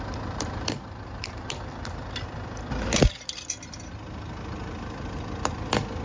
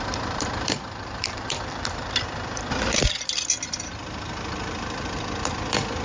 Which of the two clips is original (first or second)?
first